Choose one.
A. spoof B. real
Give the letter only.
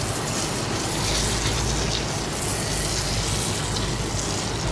B